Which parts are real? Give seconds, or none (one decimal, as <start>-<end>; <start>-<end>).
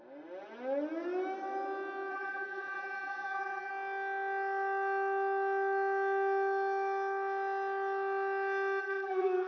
0.0-2.1; 3.7-8.8